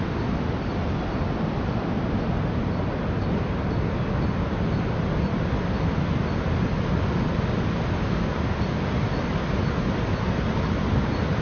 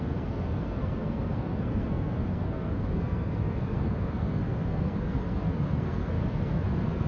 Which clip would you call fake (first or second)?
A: second